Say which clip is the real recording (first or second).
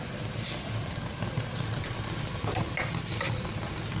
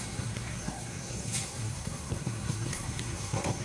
first